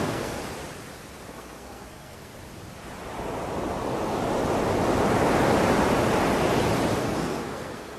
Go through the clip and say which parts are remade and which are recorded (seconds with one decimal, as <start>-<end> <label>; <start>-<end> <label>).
0.0-0.4 remade; 0.4-1.3 recorded; 1.3-2.3 remade; 2.3-7.0 recorded; 7.0-8.0 remade